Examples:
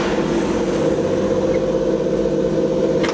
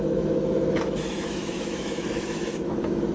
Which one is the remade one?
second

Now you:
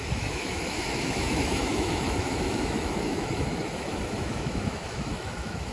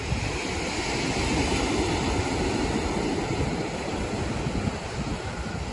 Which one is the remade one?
first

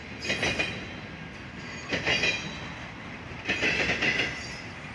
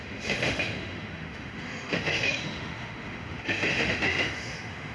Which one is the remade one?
second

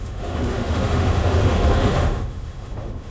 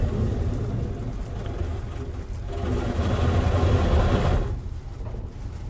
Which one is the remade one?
first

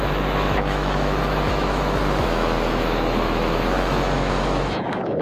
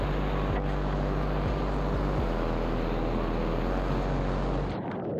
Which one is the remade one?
first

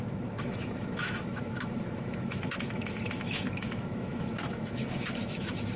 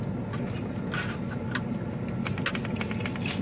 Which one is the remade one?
first